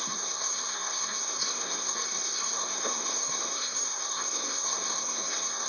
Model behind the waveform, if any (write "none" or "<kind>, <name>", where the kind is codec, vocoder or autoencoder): codec, SNAC